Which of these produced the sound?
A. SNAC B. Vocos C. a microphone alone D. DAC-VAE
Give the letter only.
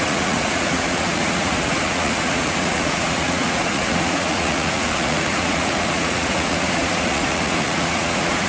B